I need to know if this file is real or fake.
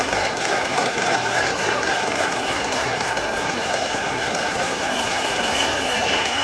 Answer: fake